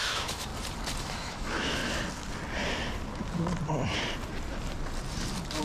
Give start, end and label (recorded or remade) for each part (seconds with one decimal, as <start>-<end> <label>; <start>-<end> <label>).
0.0-0.5 remade; 0.5-1.0 recorded; 1.0-1.8 remade; 1.8-5.6 recorded